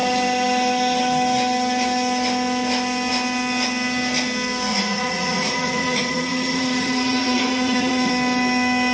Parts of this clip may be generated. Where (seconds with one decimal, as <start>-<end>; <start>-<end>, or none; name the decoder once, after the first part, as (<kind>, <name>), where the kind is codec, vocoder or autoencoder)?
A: 4.7-8.1 (vocoder, Vocos)